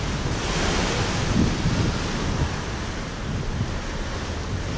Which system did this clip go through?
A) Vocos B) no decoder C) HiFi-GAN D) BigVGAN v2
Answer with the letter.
B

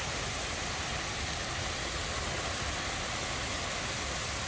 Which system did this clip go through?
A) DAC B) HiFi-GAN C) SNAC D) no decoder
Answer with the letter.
D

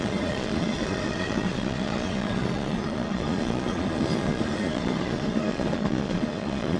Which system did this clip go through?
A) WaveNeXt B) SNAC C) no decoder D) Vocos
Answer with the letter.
D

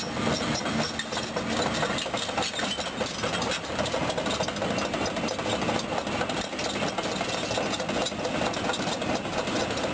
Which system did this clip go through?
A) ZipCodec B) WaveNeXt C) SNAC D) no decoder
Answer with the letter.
D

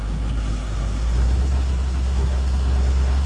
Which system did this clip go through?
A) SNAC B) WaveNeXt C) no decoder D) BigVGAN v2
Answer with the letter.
A